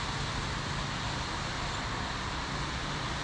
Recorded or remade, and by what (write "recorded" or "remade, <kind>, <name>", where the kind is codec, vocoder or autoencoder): recorded